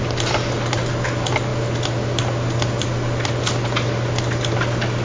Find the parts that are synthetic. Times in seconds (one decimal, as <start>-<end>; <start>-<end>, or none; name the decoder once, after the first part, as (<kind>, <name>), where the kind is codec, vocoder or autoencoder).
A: none